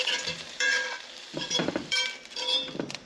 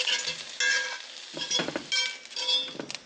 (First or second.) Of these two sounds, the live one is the second